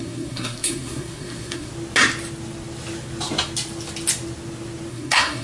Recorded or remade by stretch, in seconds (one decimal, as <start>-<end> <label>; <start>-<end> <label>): 0.0-1.7 remade; 1.7-4.9 recorded; 4.9-5.4 remade